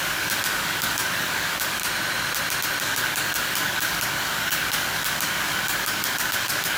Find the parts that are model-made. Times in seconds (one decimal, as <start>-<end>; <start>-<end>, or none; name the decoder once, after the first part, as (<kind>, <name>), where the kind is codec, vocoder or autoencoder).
0.0-1.8 (codec, DAC); 2.8-6.8